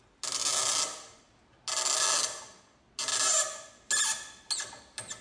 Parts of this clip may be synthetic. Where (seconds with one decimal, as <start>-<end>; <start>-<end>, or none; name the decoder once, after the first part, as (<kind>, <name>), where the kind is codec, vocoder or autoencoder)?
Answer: none